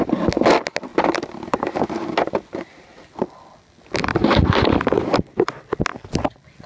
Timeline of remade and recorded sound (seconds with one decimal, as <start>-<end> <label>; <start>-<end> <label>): 0.0-0.9 recorded; 0.9-1.6 remade; 1.6-4.1 recorded; 4.1-5.8 remade; 5.8-6.7 recorded